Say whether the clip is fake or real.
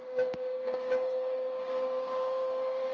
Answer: fake